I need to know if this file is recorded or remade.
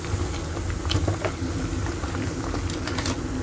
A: recorded